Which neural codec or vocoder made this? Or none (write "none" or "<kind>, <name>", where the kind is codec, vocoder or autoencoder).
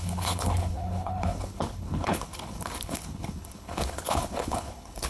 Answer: codec, HILCodec